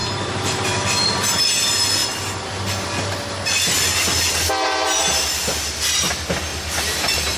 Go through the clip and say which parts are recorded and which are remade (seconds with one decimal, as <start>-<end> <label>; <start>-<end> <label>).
0.0-1.4 remade; 1.4-6.5 recorded; 6.5-7.4 remade